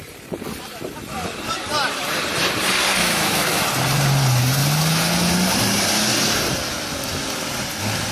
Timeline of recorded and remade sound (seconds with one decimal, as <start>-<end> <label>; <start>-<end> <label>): 0.0-3.0 recorded; 3.0-3.6 remade; 3.6-8.1 recorded